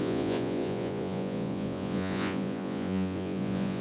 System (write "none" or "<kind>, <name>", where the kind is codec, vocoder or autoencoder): vocoder, Vocos